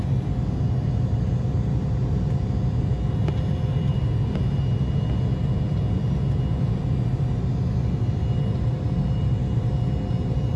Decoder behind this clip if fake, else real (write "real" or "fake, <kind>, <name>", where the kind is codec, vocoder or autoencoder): real